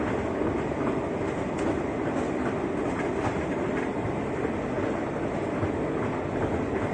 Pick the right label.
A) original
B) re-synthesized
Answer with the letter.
A